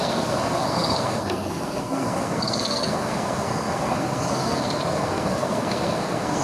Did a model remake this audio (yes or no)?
yes